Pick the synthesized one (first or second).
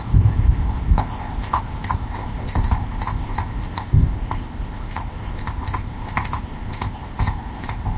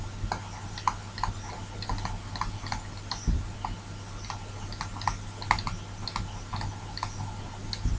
first